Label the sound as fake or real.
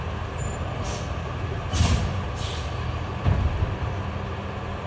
real